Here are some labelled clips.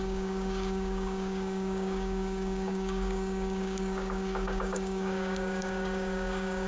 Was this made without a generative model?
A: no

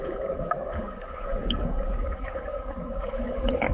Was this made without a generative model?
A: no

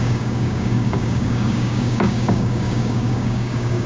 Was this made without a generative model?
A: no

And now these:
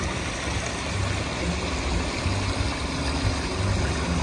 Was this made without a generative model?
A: yes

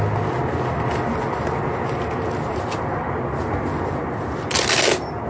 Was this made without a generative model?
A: yes